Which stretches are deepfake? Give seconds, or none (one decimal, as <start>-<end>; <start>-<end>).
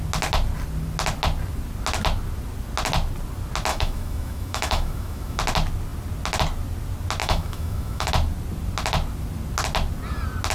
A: 3.7-5.4; 7.2-8.1